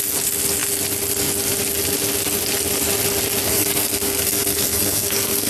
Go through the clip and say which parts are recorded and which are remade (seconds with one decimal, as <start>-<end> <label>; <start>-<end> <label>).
0.0-3.5 recorded; 3.5-5.5 remade